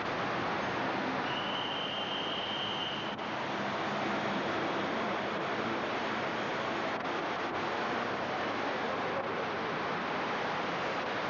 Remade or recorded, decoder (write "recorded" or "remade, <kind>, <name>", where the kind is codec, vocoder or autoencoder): recorded